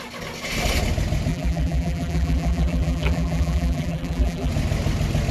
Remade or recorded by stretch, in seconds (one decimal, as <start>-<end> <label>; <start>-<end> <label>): 0.0-1.3 recorded; 1.3-4.5 remade; 4.5-5.3 recorded